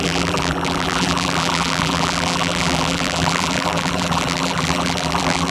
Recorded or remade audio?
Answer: remade